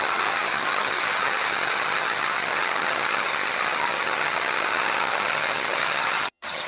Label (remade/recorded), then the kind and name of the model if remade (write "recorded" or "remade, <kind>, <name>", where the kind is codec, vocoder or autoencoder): remade, vocoder, HiFi-GAN